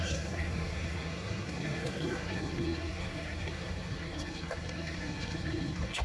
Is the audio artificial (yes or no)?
yes